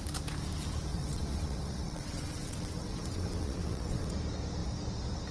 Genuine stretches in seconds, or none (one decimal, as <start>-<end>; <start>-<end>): 0.0-0.9; 4.1-5.3

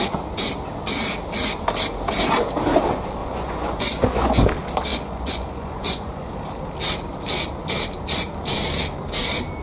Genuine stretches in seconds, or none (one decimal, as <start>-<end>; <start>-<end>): 0.0-3.2; 4.4-4.9; 6.3-9.6

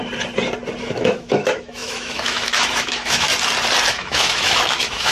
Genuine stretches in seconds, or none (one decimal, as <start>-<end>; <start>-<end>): 0.0-0.8; 3.3-3.9

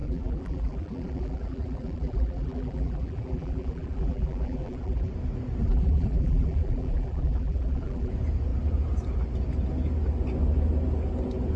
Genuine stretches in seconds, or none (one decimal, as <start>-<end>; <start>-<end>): 5.1-5.6; 8.1-11.6

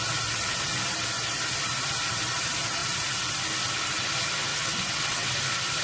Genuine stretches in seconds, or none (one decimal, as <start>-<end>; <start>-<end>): 0.0-4.5; 5.3-5.8

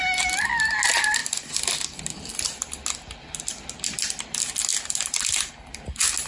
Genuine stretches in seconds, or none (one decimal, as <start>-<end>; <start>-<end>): 0.0-6.3